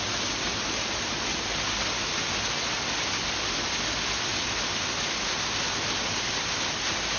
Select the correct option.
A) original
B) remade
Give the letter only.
A